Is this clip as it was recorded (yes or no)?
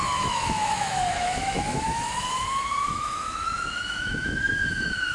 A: no